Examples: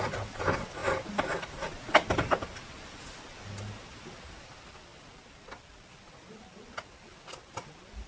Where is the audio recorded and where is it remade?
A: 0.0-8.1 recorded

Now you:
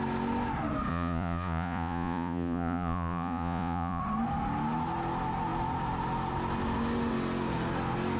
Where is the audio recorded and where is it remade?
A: 0.0-0.9 recorded; 0.9-4.0 remade; 4.0-8.2 recorded